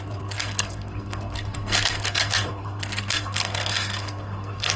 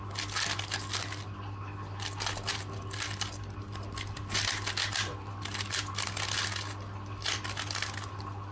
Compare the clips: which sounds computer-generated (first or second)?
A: first